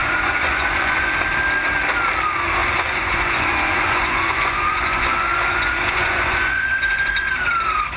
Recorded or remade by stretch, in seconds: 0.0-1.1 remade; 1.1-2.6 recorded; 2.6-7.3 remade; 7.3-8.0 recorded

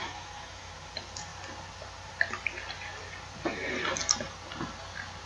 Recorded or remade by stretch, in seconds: 0.0-0.7 remade; 0.7-5.3 recorded

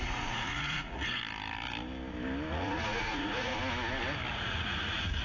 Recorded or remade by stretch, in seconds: 0.0-1.2 remade; 1.2-2.5 recorded; 2.5-3.5 remade; 3.5-4.3 recorded; 4.3-5.2 remade

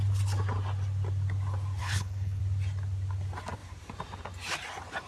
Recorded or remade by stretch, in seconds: 0.0-1.8 recorded; 1.8-2.4 remade; 2.4-5.1 recorded

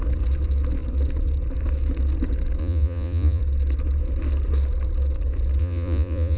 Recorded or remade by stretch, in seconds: 0.0-2.6 recorded; 2.6-3.4 remade; 3.4-5.6 recorded; 5.6-6.4 remade

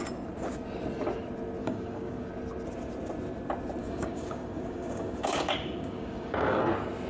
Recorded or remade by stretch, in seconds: 0.0-1.6 recorded; 1.6-2.3 remade; 2.3-3.8 recorded; 3.8-6.6 remade; 6.6-7.1 recorded

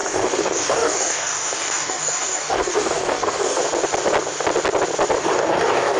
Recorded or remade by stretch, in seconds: 0.0-3.6 remade; 3.6-5.2 recorded; 5.2-6.0 remade

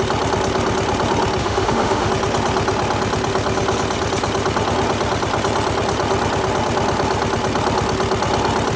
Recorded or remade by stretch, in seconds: 0.0-1.4 recorded; 1.4-2.1 remade; 2.1-8.8 recorded